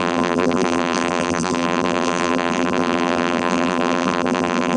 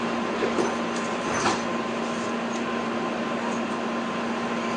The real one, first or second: second